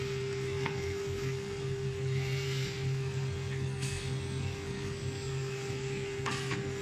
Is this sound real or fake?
fake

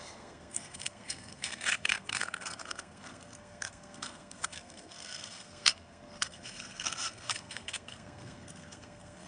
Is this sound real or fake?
fake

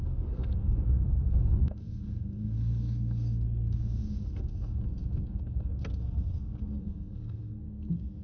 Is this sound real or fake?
fake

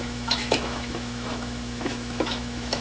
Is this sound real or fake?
fake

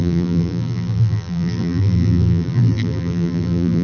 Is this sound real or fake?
fake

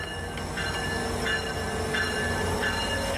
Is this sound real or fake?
real